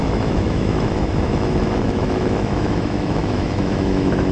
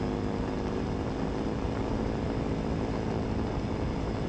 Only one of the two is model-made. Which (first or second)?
first